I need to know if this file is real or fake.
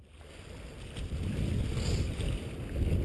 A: real